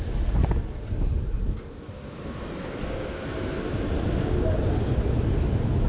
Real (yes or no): yes